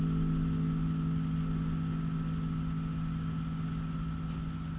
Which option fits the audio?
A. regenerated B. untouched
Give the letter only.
B